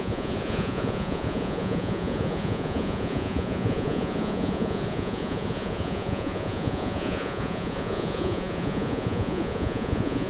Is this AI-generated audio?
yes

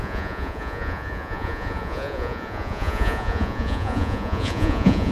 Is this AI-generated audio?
yes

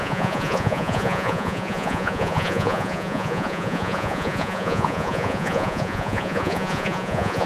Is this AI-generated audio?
yes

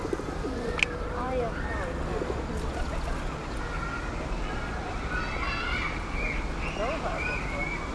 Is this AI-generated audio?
no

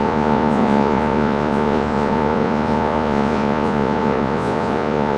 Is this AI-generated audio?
yes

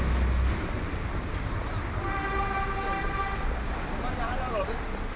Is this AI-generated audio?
no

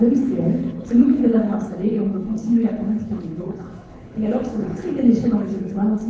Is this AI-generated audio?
yes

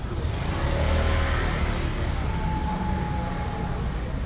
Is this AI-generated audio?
no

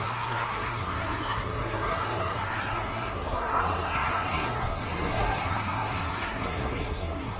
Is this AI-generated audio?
yes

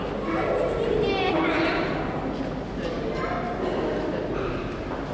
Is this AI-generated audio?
no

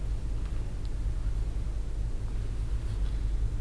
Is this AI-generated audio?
no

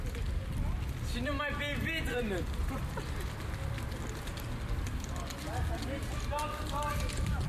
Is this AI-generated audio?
no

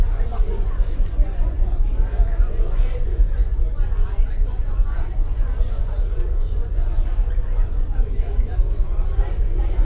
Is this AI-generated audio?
yes